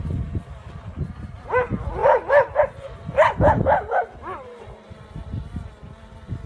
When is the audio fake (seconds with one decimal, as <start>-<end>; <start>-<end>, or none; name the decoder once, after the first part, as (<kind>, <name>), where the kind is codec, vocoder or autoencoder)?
none